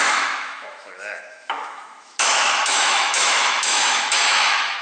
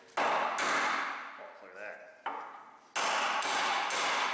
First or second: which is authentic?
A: second